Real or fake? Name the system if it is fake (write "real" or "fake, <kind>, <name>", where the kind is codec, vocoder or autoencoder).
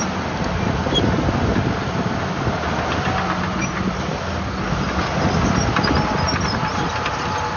real